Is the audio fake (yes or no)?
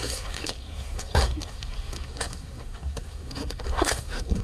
yes